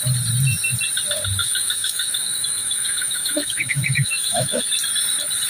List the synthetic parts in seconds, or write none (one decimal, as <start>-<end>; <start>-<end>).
1.4-4.7